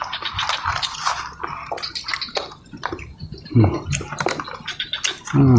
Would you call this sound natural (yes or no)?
yes